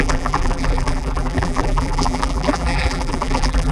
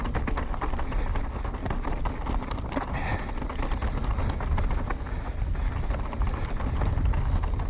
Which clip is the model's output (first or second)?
first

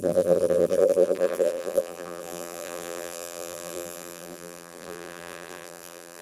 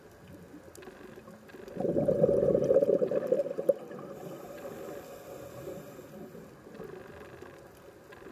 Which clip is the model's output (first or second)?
first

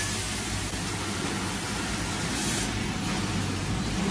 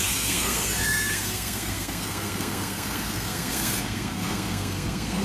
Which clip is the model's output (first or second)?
second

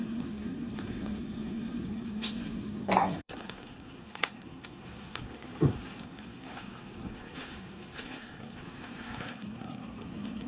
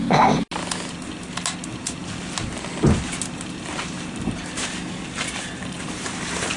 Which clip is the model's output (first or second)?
first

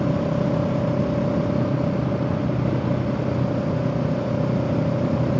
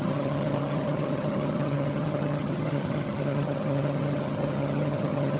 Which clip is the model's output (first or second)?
second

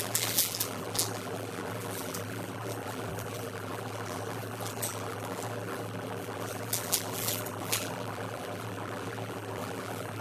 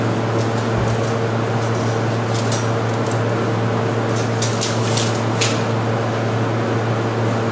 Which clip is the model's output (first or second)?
first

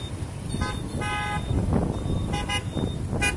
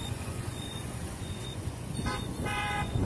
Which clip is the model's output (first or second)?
second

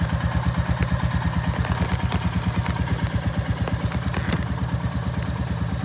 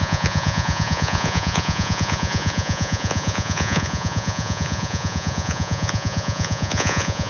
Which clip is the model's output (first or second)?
second